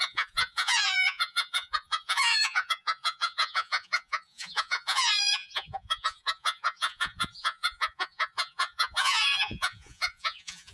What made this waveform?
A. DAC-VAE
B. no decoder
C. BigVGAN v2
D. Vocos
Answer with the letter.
D